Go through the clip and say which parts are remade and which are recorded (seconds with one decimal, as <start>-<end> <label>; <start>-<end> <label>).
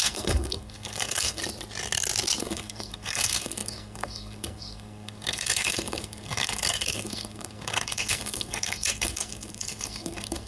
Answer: 0.0-1.4 remade; 1.4-2.4 recorded; 2.4-10.5 remade